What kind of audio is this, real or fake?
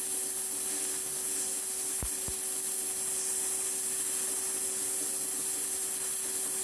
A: real